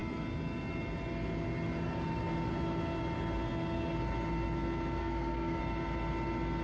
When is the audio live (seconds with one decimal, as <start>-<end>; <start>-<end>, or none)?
0.0-5.0; 5.6-6.6